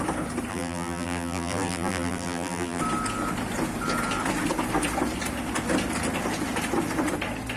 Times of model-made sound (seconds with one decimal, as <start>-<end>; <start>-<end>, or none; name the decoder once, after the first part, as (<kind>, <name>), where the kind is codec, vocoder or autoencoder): 0.5-2.8 (vocoder, BigVGAN v2)